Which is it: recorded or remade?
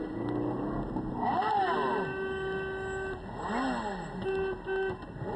recorded